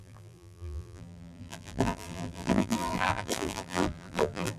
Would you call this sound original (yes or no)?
no